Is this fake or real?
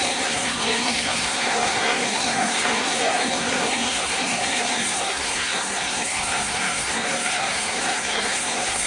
fake